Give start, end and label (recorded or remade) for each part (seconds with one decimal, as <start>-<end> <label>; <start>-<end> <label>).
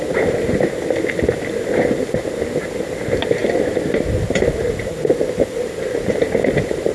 0.0-3.4 recorded; 3.4-6.3 remade; 6.3-6.9 recorded